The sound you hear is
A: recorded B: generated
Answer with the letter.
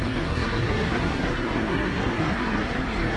B